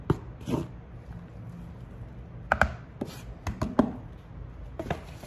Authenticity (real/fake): real